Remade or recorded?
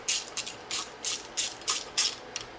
recorded